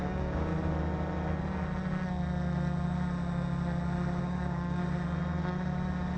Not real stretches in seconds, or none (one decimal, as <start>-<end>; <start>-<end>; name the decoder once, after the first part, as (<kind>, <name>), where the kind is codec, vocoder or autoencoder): 0.0-0.5 (codec, DAC); 4.2-4.8